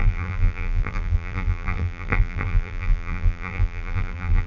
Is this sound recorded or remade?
remade